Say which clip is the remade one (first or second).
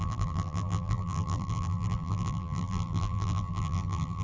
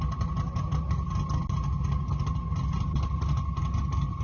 first